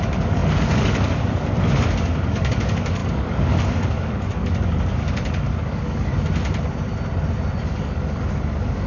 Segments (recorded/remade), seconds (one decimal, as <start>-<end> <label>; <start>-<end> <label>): 0.0-6.1 remade; 6.1-7.6 recorded; 7.6-8.9 remade